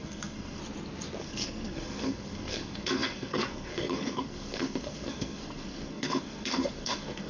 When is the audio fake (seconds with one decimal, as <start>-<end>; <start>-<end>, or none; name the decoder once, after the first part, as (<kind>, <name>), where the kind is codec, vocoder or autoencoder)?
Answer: 0.0-0.6 (codec, SNAC); 1.2-7.3